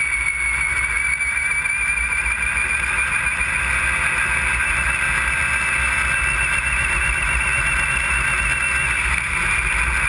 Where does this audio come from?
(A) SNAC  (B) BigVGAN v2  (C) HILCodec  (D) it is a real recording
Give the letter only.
D